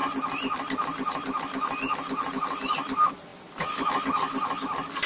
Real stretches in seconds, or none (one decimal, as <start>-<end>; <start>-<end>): 0.0-5.1